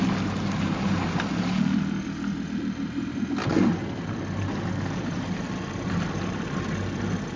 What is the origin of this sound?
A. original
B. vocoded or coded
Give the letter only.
A